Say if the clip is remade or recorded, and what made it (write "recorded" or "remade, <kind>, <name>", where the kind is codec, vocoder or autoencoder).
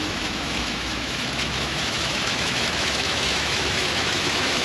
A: remade, autoencoder, DAC-VAE